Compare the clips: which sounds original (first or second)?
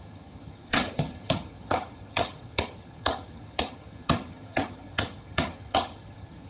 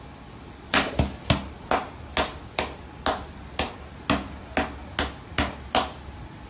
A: second